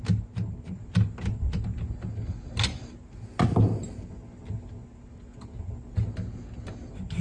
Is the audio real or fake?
real